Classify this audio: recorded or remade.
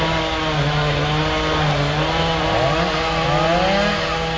recorded